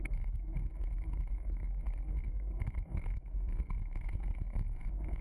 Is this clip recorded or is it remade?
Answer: remade